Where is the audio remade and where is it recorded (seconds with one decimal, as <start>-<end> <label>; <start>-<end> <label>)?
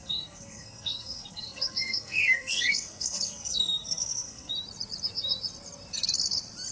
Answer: 0.0-4.5 remade; 4.5-6.7 recorded